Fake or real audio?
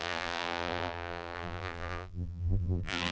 fake